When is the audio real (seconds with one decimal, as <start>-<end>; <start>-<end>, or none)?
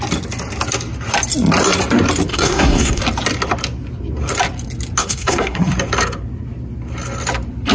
0.0-2.3; 3.0-5.0; 5.6-7.7